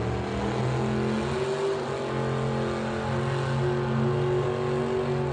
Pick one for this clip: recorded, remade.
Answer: recorded